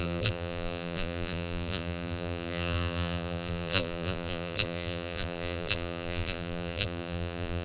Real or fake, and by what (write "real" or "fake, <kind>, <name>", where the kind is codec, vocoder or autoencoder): fake, vocoder, BigVGAN v2